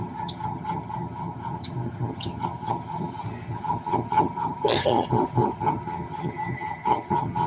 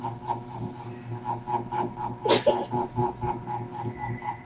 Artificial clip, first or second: first